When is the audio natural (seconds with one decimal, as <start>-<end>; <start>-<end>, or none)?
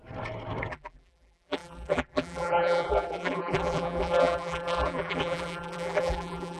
0.0-0.7